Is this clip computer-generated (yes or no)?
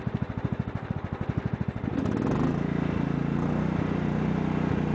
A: no